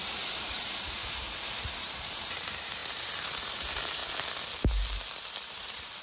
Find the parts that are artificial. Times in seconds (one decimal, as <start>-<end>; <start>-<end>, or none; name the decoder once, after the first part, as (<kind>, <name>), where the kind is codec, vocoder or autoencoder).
0.0-1.0 (vocoder, BigVGAN v2); 1.8-4.0; 5.5-6.0